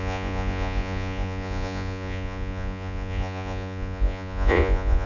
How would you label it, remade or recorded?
remade